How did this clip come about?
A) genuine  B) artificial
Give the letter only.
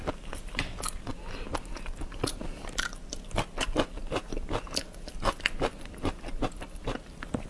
A